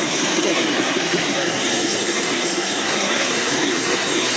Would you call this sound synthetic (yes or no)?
yes